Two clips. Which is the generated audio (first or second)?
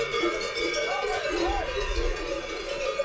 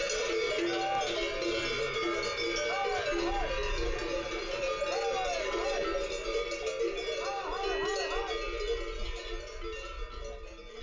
first